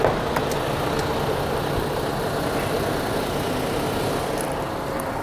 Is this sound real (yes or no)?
yes